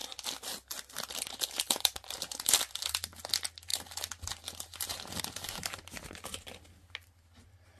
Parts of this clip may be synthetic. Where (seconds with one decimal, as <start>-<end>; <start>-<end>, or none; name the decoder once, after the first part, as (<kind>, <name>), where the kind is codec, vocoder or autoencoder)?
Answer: none